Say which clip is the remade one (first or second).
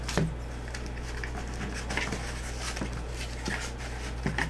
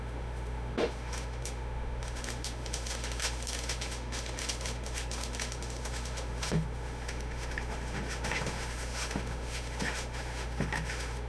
second